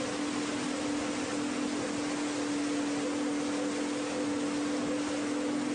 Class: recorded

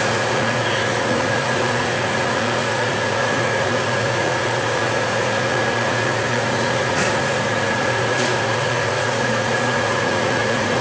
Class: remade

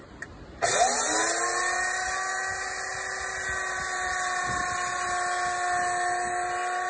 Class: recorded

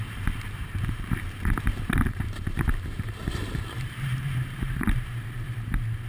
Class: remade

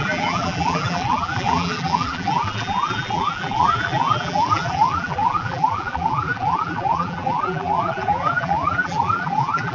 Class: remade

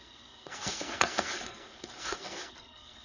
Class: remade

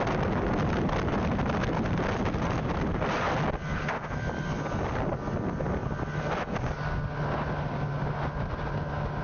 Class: recorded